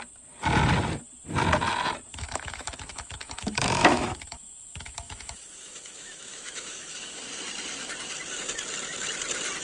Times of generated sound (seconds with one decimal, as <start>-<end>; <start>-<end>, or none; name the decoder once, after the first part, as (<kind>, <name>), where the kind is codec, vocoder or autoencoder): 2.1-7.2 (autoencoder, DAC-VAE)